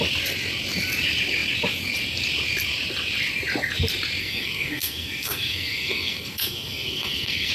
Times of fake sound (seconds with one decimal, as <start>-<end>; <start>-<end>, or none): 4.2-7.5